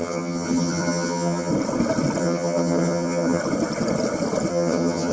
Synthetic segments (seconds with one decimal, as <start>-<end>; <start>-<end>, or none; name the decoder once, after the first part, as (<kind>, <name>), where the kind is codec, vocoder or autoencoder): 0.0-1.5 (vocoder, HiFi-GAN); 2.2-3.4; 4.5-5.1

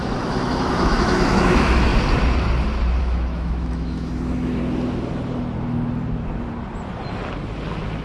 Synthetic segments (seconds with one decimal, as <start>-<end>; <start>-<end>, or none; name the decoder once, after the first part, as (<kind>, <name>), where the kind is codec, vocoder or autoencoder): 0.0-1.9 (autoencoder, DAC-VAE); 3.0-4.6

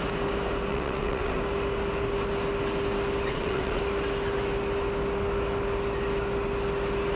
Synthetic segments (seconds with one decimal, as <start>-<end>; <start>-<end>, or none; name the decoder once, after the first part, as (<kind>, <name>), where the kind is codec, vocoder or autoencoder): 0.7-1.4 (vocoder, WaveNeXt); 3.3-3.8

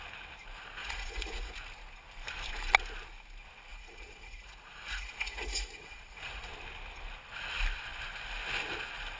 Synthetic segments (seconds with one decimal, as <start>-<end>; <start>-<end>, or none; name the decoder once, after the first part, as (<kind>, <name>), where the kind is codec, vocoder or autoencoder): 0.8-1.5 (vocoder, Vocos); 3.7-6.5